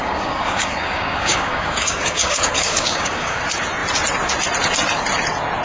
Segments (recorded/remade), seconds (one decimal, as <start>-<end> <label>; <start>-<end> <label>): 0.0-3.4 remade; 3.4-5.6 recorded